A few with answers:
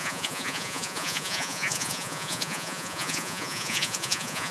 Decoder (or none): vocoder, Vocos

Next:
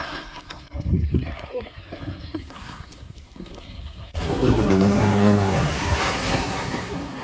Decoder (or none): codec, SNAC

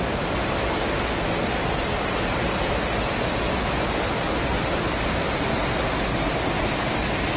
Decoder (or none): none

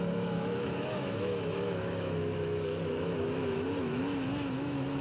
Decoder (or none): autoencoder, DAC-VAE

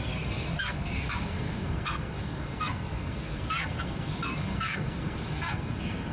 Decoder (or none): codec, SNAC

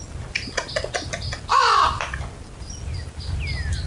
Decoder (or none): none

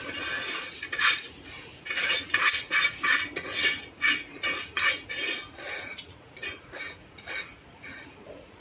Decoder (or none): vocoder, Vocos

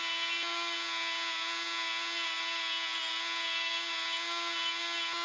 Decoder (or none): none